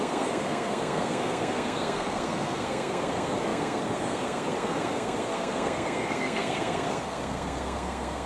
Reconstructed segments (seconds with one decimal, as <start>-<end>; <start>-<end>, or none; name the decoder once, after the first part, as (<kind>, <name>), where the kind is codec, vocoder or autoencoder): 0.0-8.3 (codec, SNAC)